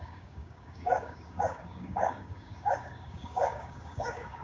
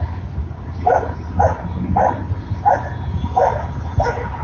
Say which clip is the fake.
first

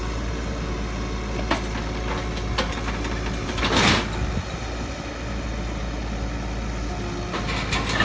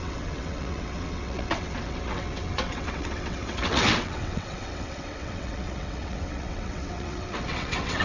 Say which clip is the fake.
second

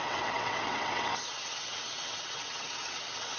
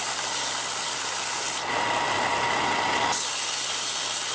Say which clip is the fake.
first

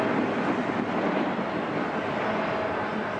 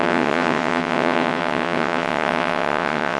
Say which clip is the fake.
second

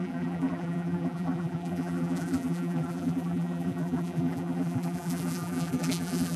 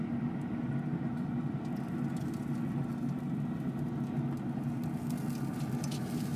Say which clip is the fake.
first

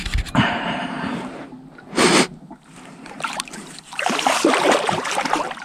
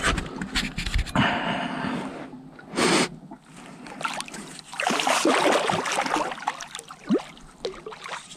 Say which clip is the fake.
first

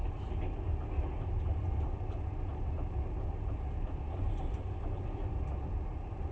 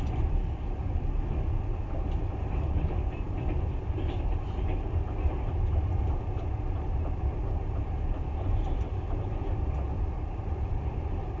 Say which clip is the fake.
second